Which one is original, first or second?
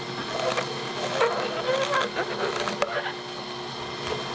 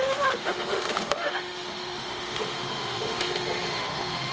first